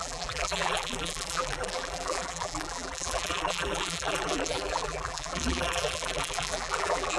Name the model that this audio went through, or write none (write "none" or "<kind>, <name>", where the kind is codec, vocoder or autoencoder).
vocoder, BigVGAN v2